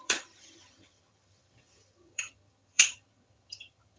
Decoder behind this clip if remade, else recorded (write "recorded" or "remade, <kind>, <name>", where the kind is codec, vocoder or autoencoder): remade, vocoder, HiFi-GAN